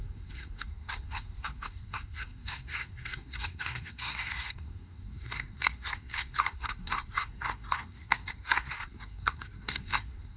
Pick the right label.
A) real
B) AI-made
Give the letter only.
B